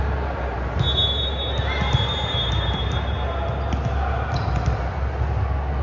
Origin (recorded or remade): recorded